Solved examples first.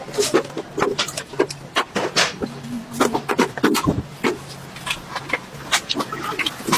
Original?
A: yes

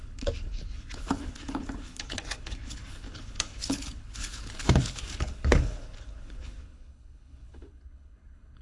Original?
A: no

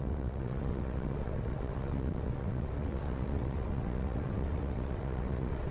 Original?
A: no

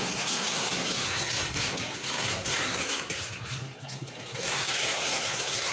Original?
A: no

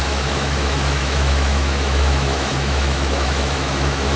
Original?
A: no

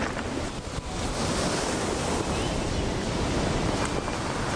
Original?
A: yes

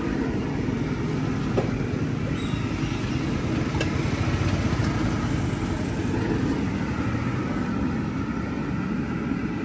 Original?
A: yes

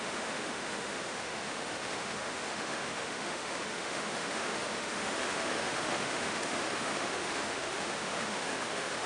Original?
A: no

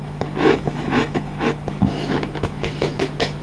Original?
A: no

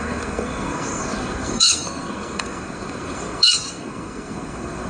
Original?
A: no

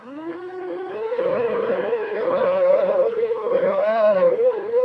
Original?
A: no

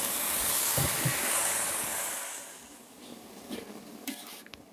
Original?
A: no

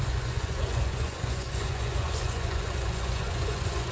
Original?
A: no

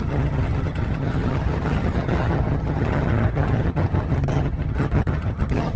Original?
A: no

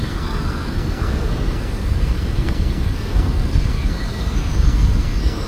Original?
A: no